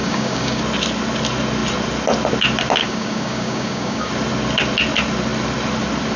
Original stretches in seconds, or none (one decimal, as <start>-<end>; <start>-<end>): 0.6-2.8; 4.1-6.2